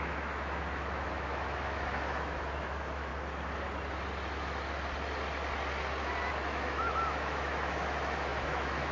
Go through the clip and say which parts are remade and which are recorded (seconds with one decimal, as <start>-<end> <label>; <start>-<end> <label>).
0.0-3.1 remade; 3.1-6.3 recorded; 6.3-8.9 remade